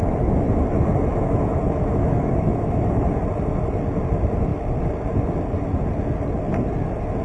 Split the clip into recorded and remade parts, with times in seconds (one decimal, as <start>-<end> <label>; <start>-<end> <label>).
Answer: 0.0-1.1 recorded; 1.1-3.2 remade; 3.2-7.2 recorded